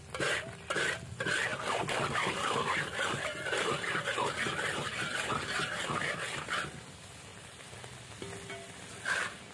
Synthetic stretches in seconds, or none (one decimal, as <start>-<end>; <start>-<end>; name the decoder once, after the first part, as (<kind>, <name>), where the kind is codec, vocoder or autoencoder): none

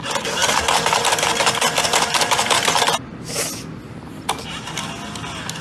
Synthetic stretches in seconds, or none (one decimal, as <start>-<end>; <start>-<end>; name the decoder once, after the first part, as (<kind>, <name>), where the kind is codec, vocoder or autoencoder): none

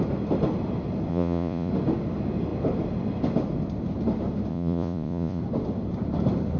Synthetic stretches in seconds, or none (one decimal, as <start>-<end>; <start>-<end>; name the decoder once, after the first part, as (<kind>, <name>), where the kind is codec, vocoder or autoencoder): 1.1-1.7 (vocoder, Vocos); 4.5-5.4

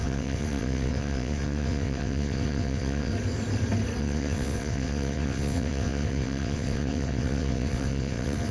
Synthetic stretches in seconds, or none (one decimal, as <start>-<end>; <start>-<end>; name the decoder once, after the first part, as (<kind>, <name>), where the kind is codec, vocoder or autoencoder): 0.0-3.1 (vocoder, WaveNeXt); 4.0-8.5